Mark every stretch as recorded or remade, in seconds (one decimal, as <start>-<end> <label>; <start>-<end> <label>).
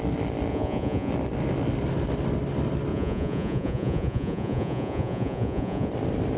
0.0-0.5 recorded; 0.5-1.1 remade; 1.1-2.9 recorded; 2.9-5.9 remade; 5.9-6.4 recorded